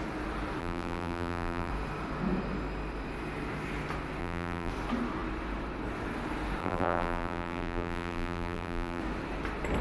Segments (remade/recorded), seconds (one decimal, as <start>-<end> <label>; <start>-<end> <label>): 0.0-0.6 recorded; 0.6-1.7 remade; 1.7-4.2 recorded; 4.2-4.7 remade; 4.7-6.6 recorded; 6.6-9.0 remade; 9.0-9.8 recorded